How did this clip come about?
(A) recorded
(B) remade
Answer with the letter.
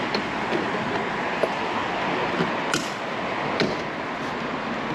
A